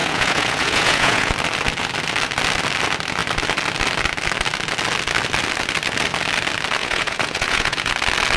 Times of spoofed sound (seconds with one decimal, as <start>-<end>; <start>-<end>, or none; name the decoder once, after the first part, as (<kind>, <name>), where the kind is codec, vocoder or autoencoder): 0.0-1.3 (vocoder, Vocos); 6.8-7.9